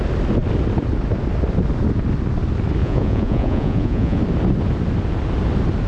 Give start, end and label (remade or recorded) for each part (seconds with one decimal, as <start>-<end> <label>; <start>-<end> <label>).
0.0-2.8 recorded; 2.8-4.2 remade; 4.2-5.9 recorded